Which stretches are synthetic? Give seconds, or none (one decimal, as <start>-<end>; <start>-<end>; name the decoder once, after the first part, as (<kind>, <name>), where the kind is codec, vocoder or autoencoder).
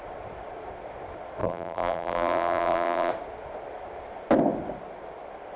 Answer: 1.4-3.1 (vocoder, BigVGAN v2)